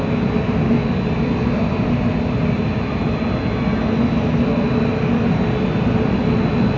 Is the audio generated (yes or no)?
no